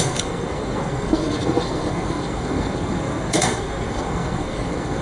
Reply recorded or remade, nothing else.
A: remade